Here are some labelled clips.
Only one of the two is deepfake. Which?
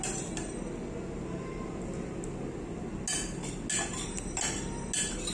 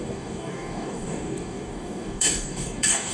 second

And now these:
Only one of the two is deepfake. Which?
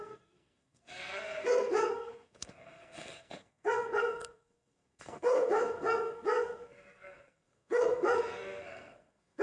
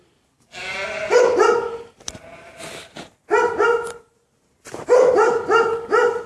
first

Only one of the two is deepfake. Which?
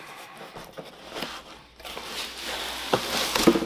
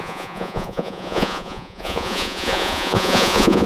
second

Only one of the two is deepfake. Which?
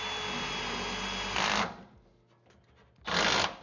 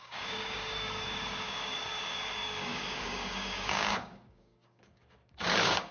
second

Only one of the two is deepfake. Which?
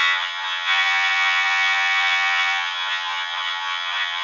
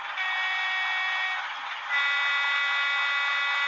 first